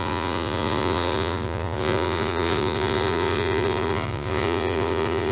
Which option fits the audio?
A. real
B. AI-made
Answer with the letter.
B